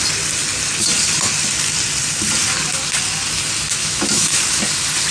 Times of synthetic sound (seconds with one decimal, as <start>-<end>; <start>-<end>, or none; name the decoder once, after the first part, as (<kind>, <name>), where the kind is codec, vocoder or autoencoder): 3.8-4.4 (autoencoder, DAC-VAE)

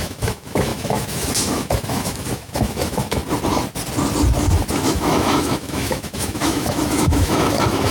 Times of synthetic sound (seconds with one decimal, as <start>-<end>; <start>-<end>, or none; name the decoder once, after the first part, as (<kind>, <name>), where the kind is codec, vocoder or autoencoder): 0.0-3.2 (autoencoder, DAC-VAE); 4.7-7.9

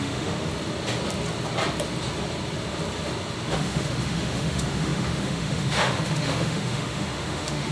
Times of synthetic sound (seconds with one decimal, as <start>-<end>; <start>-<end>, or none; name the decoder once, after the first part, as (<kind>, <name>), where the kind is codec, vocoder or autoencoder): 0.0-0.5 (autoencoder, DAC-VAE); 3.5-7.7